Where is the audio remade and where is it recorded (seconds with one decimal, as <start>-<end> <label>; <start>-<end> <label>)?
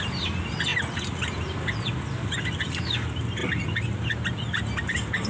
0.0-5.3 recorded